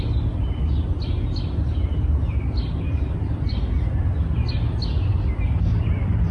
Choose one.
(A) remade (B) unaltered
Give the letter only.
B